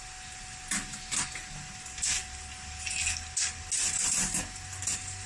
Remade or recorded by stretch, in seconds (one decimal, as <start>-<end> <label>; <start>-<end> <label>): 0.0-5.3 recorded